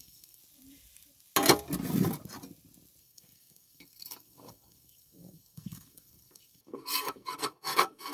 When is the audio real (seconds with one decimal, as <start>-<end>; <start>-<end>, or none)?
0.4-3.0